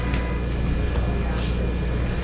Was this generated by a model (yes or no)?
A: no